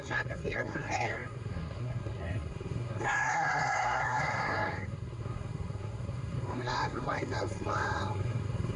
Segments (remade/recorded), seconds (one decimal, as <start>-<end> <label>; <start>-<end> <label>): 0.0-8.8 remade